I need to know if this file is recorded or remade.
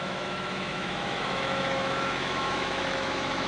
remade